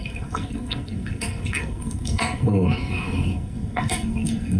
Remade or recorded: remade